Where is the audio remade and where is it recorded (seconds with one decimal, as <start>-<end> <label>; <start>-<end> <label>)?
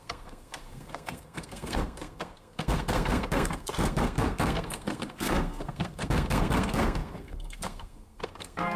0.0-8.8 remade